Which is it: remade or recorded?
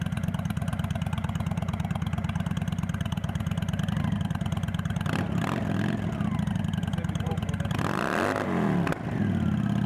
recorded